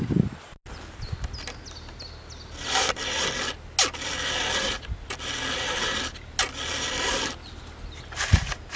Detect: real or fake real